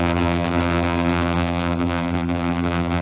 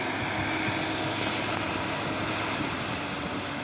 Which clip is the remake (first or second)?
first